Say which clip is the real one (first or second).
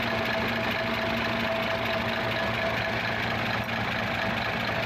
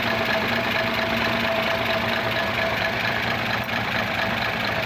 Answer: first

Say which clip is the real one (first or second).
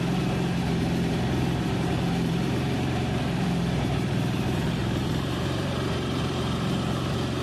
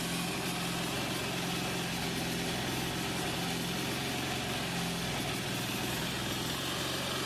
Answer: second